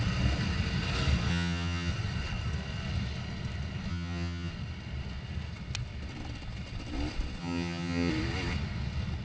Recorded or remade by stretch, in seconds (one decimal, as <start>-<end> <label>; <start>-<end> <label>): 0.0-1.3 recorded; 1.3-1.9 remade; 1.9-3.9 recorded; 3.9-4.5 remade; 4.5-7.4 recorded; 7.4-8.1 remade; 8.1-9.2 recorded